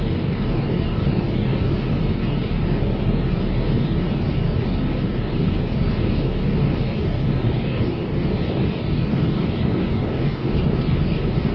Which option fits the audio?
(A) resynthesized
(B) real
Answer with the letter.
A